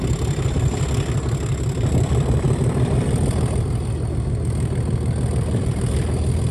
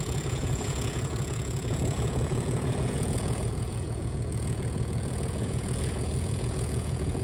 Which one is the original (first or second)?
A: first